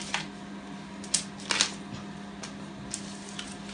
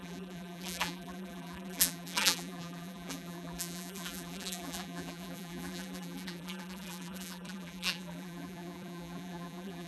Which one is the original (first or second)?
first